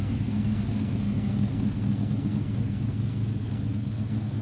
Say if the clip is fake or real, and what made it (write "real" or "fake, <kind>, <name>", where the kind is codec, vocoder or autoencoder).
fake, codec, SNAC